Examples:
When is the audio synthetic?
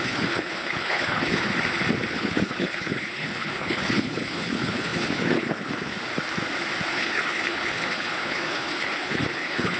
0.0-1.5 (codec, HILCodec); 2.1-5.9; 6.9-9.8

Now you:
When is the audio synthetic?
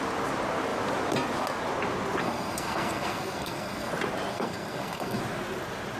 2.2-3.9 (codec, SNAC); 4.3-5.2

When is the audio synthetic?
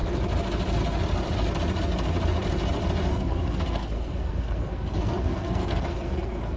3.1-6.6 (codec, SNAC)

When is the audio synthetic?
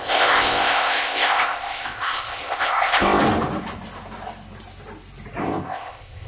0.0-3.2 (codec, ZipCodec); 5.4-6.3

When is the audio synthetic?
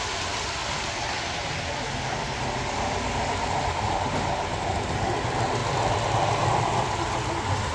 none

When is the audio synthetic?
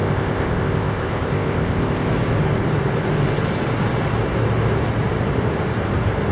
0.0-2.1 (codec, ZipCodec)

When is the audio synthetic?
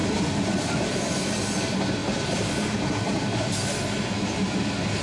none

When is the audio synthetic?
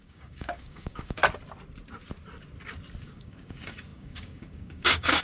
0.0-1.2 (codec, DAC); 3.0-5.2